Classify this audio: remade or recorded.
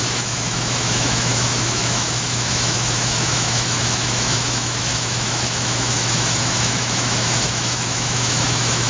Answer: remade